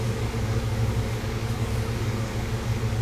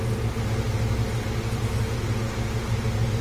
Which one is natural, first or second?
second